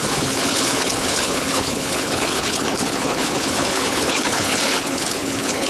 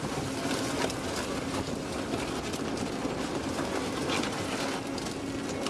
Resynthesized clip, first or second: first